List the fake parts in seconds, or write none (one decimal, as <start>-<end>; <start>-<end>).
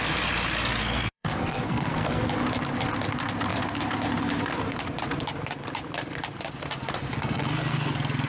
0.8-2.2; 7.1-7.9